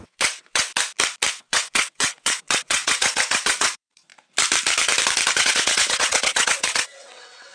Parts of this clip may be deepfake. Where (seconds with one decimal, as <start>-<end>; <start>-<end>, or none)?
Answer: 0.0-0.7; 1.3-4.1; 5.3-7.5